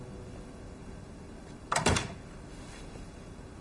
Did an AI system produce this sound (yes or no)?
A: no